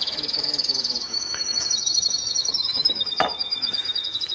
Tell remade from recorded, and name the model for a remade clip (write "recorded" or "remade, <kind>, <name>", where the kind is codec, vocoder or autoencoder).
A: remade, autoencoder, DAC-VAE